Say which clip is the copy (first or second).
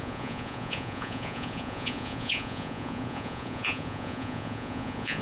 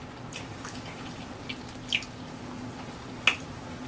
first